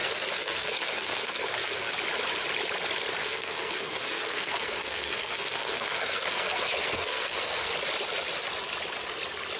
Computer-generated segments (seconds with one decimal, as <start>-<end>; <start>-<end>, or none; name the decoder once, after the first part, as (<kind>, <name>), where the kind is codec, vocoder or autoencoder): 0.0-1.9 (codec, SNAC); 3.2-7.7